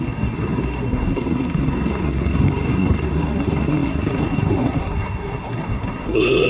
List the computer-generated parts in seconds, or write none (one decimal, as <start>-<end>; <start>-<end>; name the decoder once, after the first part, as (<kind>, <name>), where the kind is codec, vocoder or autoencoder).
0.0-6.5 (codec, SNAC)

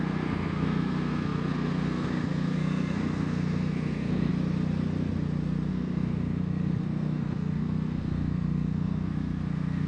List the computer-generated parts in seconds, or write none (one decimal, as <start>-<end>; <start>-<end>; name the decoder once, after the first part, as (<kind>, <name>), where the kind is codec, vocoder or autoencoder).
0.0-4.3 (codec, SNAC); 5.7-9.9

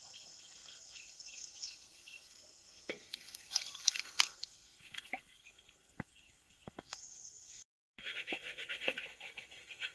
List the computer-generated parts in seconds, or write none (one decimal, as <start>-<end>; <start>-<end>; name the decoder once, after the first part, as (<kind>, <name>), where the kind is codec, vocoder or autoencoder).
0.0-9.9 (codec, SNAC)

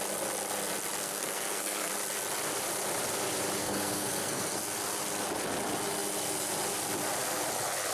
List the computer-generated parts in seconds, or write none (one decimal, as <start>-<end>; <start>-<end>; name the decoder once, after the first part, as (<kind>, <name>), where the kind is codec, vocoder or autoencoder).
1.0-1.9 (codec, SNAC); 3.6-4.6